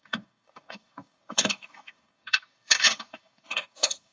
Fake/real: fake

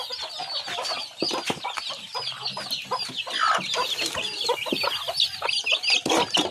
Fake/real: real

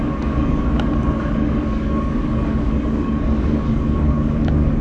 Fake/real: fake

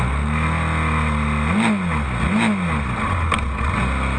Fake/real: real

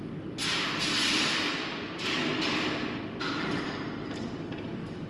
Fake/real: real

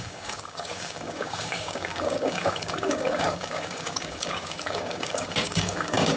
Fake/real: fake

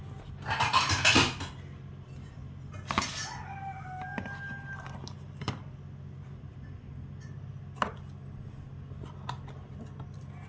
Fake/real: real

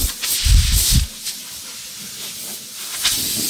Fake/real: real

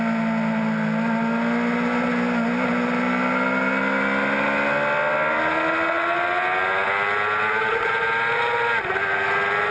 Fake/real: real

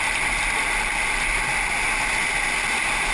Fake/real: real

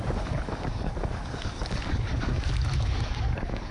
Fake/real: fake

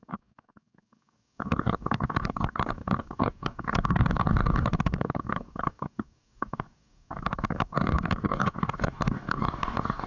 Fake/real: fake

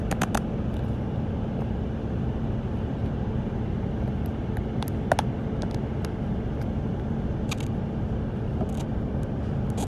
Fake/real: real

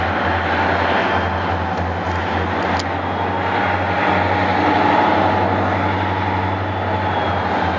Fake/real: real